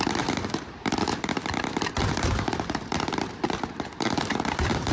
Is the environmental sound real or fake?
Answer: fake